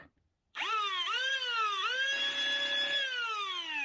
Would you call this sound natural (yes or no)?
yes